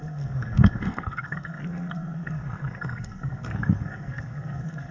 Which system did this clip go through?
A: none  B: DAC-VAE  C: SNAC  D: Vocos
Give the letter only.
C